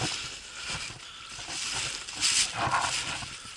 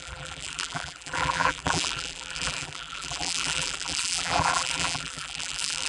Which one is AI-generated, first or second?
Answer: second